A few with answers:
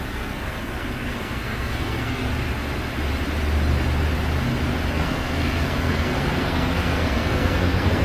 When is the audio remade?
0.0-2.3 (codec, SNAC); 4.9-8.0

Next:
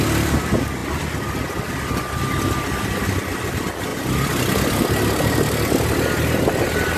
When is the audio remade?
none

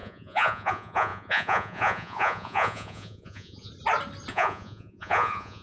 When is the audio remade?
0.0-3.7 (vocoder, Vocos); 4.3-5.6

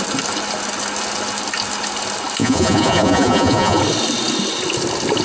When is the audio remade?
2.4-3.8 (vocoder, Vocos)

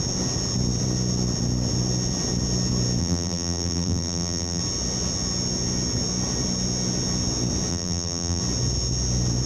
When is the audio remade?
3.0-4.6 (vocoder, BigVGAN v2); 7.7-8.4

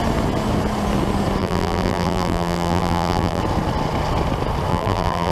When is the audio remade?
1.4-3.4 (vocoder, BigVGAN v2); 4.7-5.3